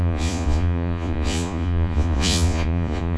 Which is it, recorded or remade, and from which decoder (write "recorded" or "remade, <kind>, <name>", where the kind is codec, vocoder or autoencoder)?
remade, vocoder, Vocos